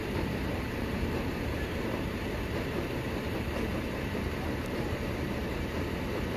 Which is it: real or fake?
fake